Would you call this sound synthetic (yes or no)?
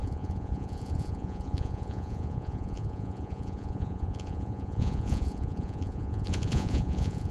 yes